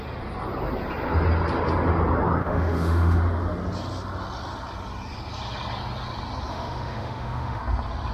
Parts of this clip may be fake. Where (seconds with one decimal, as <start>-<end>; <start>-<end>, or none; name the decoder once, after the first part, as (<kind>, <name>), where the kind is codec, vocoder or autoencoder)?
2.4-3.2 (autoencoder, DAC-VAE); 6.5-7.6